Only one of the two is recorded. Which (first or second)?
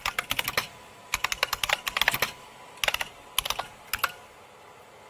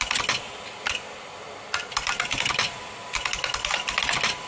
first